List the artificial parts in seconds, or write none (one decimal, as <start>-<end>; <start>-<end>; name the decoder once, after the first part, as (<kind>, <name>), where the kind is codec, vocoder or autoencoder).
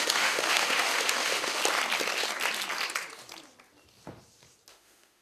0.0-1.6 (autoencoder, DAC-VAE); 4.7-5.2